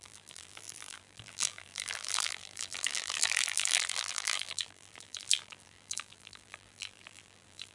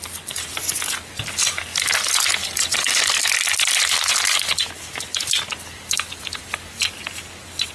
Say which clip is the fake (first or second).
first